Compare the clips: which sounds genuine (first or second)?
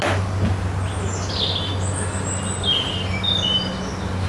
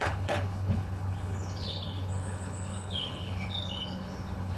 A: first